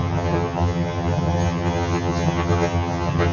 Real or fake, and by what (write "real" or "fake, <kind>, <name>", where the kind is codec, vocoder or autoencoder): fake, vocoder, HiFi-GAN